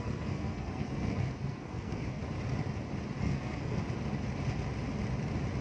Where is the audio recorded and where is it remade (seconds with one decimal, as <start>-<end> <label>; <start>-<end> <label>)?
0.0-2.2 remade; 2.2-3.2 recorded; 3.2-3.8 remade; 3.8-5.6 recorded